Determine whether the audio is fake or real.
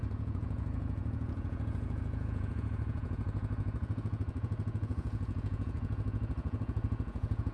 fake